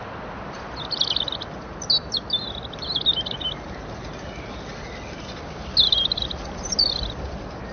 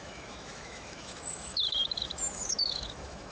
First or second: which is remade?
second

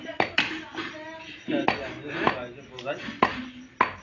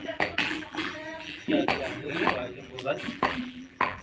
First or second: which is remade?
second